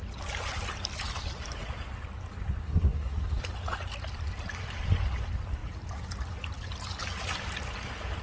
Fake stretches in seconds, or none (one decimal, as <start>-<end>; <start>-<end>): 2.6-3.4